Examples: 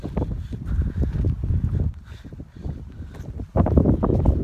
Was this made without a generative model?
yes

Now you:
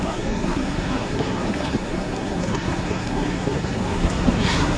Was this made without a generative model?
no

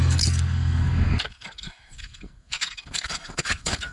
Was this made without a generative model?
no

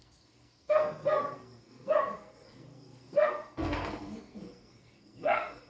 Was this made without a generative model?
no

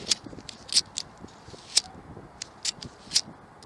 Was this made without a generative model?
yes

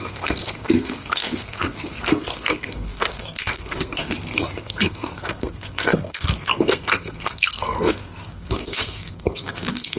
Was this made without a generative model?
no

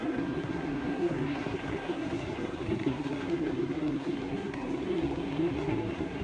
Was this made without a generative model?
no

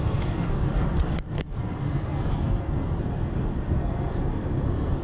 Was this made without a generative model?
no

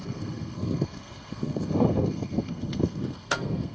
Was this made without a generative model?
no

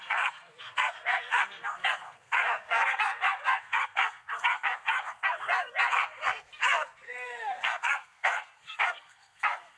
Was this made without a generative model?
no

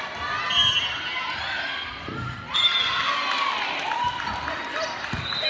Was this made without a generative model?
yes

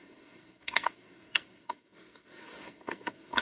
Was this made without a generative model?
no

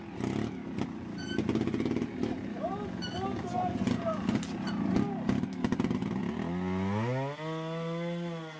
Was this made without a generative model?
yes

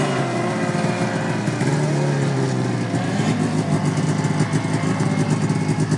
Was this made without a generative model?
yes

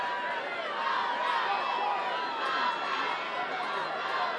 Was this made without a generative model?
yes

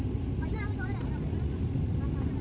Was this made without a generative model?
yes